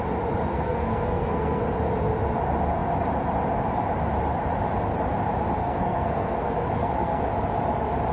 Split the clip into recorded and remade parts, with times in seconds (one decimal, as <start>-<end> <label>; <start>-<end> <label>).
0.0-0.5 recorded; 0.5-1.6 remade; 1.6-5.6 recorded; 5.6-7.2 remade; 7.2-8.1 recorded